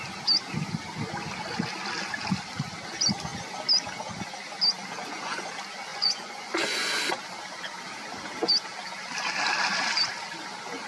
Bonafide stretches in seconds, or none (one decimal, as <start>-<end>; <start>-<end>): 0.0-5.0; 5.5-5.9; 7.0-10.9